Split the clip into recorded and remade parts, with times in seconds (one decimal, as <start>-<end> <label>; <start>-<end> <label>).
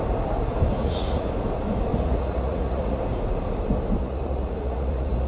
0.0-0.8 recorded; 0.8-1.3 remade; 1.3-1.9 recorded; 1.9-3.0 remade; 3.0-4.0 recorded; 4.0-5.3 remade